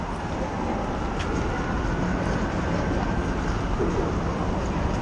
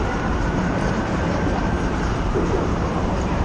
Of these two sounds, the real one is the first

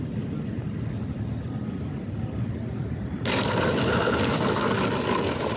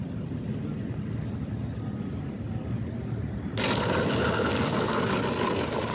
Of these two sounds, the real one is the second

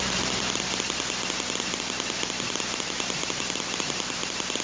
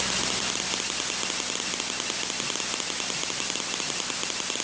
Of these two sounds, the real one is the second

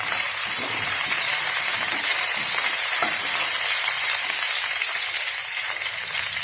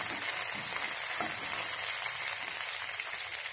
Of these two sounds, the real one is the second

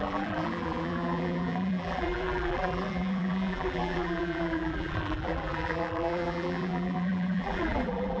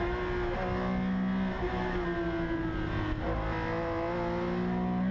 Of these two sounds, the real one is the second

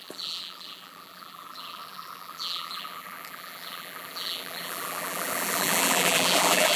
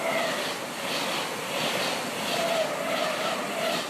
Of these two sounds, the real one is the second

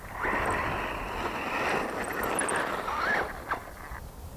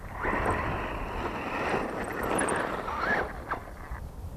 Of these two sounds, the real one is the first